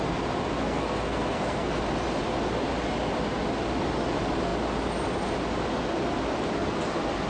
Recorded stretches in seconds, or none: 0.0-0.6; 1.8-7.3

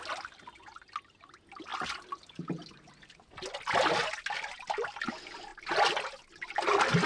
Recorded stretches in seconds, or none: 0.0-7.1

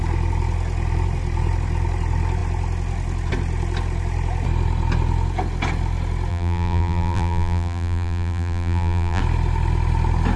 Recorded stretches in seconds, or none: 0.0-6.3; 9.2-10.4

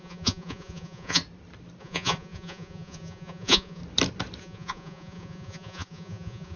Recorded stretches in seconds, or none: 1.2-1.8; 3.8-4.4

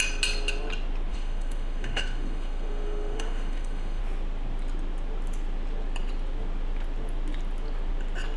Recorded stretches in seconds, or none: 0.0-1.1; 4.0-8.4

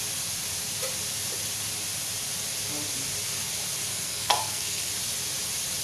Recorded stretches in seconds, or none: 0.0-3.9; 4.9-5.8

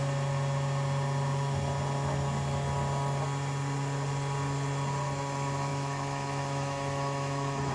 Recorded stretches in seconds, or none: 0.0-5.7

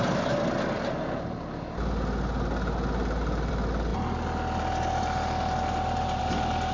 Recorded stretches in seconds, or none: 0.0-6.7